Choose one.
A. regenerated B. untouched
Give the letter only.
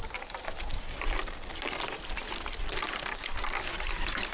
B